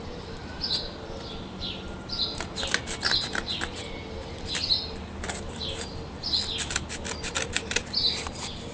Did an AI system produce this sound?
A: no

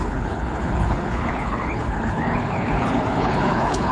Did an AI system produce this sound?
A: yes